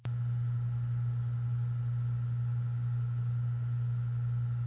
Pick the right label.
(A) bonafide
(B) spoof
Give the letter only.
A